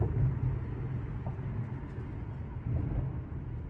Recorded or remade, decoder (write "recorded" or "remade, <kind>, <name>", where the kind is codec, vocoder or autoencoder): recorded